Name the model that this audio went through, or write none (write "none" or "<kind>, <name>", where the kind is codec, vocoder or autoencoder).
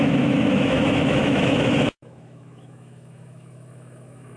autoencoder, DAC-VAE